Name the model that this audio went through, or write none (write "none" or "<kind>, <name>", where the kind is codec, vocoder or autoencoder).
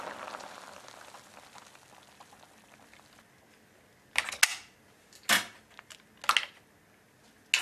none